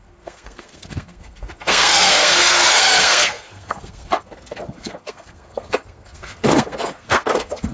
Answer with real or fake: fake